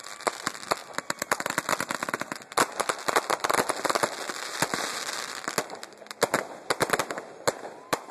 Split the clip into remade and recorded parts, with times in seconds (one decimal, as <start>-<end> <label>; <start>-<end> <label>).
0.0-8.1 recorded